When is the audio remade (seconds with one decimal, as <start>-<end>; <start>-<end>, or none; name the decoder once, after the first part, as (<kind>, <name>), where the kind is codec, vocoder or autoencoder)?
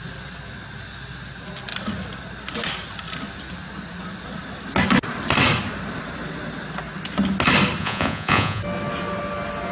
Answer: 7.8-8.6 (vocoder, Vocos)